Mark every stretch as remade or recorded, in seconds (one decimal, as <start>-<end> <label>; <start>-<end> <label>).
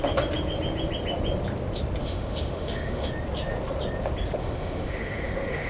0.0-2.0 recorded; 2.0-3.1 remade; 3.1-4.4 recorded; 4.4-5.7 remade